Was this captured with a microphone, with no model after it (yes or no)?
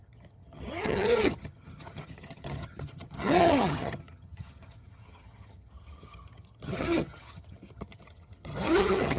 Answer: no